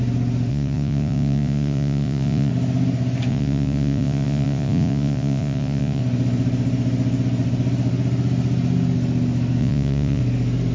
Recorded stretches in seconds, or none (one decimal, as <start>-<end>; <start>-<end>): 0.0-0.5; 2.5-3.3; 6.0-9.6; 10.2-10.7